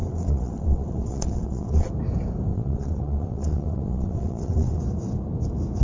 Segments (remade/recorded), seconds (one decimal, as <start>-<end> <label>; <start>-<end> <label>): 0.0-1.9 remade; 1.9-2.5 recorded; 2.5-4.8 remade; 4.8-5.8 recorded